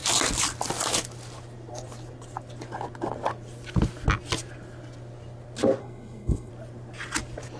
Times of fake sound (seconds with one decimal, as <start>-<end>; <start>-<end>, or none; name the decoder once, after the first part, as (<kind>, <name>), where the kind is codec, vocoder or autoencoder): 5.8-6.5 (codec, SNAC)